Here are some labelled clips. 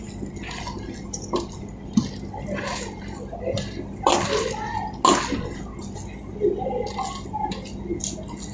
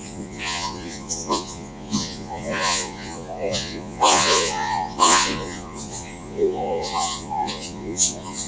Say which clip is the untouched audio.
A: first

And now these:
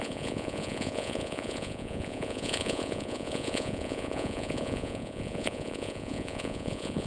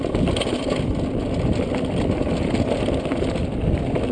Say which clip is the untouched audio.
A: second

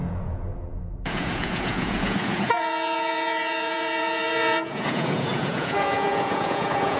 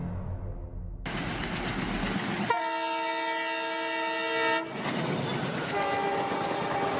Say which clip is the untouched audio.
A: second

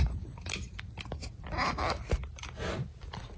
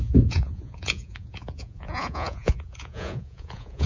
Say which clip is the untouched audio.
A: first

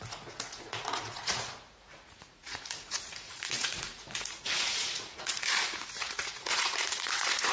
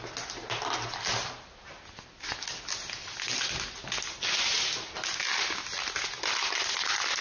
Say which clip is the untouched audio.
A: second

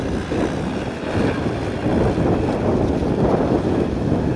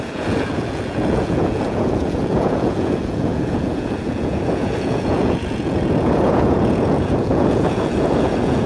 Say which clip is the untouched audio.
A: first